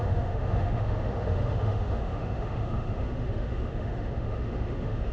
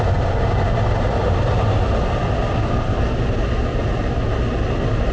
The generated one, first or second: first